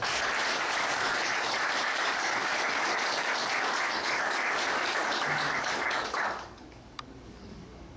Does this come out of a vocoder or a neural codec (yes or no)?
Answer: yes